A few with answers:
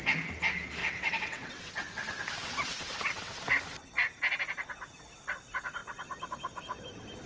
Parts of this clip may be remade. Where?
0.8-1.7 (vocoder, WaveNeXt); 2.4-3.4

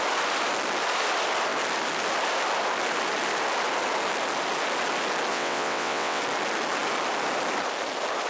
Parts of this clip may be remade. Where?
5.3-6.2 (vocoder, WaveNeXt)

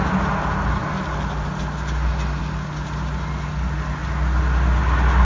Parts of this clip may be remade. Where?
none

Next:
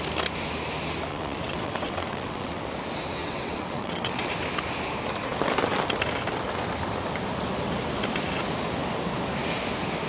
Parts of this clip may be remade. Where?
1.1-2.6 (vocoder, WaveNeXt); 3.2-4.3

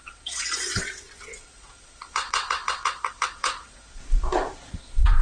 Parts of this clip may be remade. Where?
0.0-4.0 (vocoder, WaveNeXt); 4.8-5.2

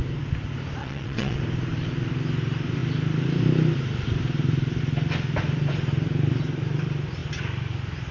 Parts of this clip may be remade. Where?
0.8-1.4 (vocoder, WaveNeXt)